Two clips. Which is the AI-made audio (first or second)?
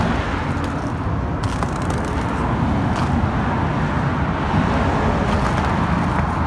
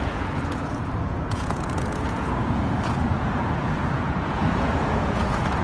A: second